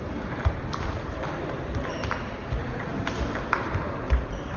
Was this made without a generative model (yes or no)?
no